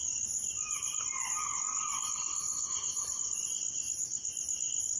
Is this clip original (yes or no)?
yes